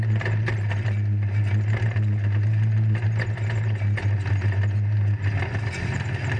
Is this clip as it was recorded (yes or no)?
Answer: yes